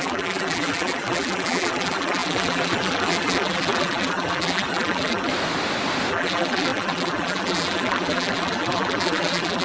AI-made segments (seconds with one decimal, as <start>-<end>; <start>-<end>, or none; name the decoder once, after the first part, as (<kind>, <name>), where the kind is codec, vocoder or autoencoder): 0.0-5.3 (vocoder, BigVGAN v2); 6.1-9.6